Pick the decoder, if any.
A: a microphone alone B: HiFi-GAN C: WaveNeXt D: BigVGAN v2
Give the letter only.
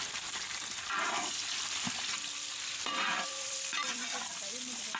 D